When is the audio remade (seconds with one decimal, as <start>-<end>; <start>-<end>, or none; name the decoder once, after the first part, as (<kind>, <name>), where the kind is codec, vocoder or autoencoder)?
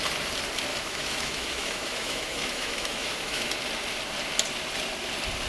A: 0.7-3.5 (autoencoder, DAC-VAE)